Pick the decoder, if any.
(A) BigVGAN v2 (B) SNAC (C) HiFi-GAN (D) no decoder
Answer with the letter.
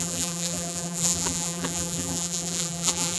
A